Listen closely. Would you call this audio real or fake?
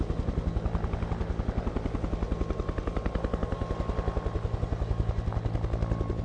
real